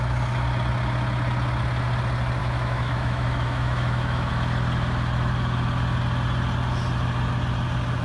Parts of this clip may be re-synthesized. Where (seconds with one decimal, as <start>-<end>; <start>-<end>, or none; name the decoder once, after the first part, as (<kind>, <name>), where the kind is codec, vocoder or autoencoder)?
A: 2.4-4.3 (autoencoder, DAC-VAE)